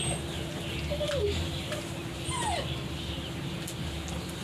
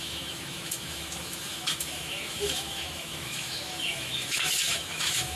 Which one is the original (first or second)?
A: first